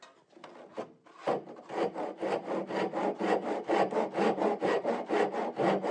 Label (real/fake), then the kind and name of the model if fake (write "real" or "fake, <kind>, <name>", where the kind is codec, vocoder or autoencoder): real